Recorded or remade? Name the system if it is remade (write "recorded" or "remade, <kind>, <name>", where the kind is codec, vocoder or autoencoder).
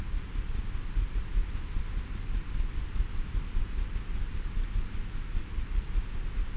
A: recorded